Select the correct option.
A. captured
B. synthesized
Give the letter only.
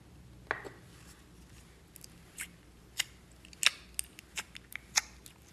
A